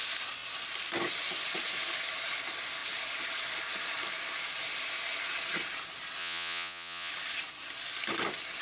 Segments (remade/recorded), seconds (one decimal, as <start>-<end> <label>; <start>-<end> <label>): 0.0-6.2 recorded; 6.2-7.1 remade; 7.1-8.6 recorded